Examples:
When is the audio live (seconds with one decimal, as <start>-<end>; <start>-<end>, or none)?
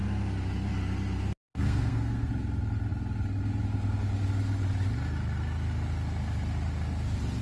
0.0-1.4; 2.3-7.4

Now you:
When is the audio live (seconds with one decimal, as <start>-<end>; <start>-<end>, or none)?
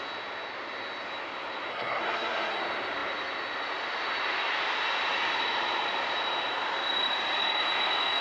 0.0-1.7; 2.6-8.2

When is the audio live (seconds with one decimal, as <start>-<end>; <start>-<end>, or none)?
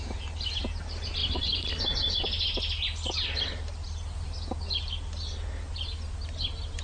0.0-6.8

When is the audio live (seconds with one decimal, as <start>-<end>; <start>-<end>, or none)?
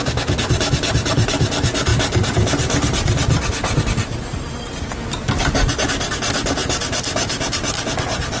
0.0-8.4